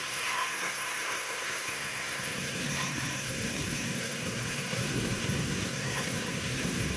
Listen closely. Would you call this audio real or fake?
fake